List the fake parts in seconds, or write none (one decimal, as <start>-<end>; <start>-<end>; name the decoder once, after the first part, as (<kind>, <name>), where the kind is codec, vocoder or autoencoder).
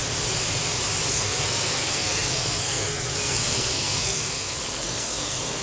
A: 1.1-5.6 (codec, SNAC)